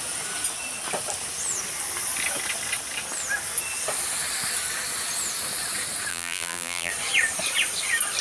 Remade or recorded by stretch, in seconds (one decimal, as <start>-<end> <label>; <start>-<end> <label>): 0.0-6.1 recorded; 6.1-6.9 remade; 6.9-8.2 recorded